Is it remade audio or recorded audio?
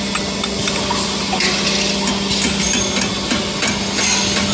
recorded